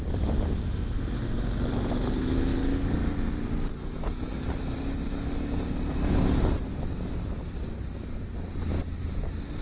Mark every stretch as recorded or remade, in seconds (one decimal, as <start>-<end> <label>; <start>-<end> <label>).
0.0-9.6 recorded